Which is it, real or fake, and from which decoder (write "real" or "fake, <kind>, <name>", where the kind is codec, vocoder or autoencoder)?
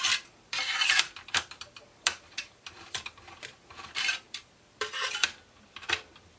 fake, vocoder, BigVGAN v2